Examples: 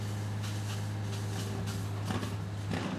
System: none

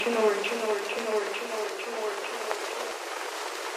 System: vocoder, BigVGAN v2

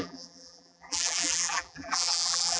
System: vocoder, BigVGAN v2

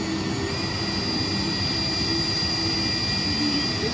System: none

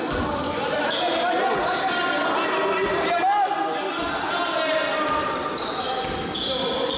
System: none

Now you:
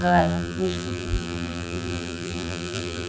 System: vocoder, BigVGAN v2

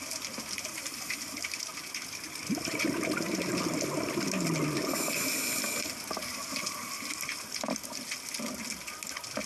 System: none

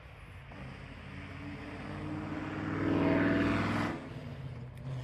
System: none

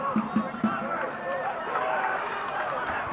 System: vocoder, BigVGAN v2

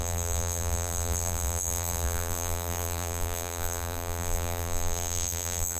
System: vocoder, BigVGAN v2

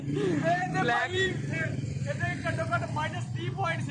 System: vocoder, BigVGAN v2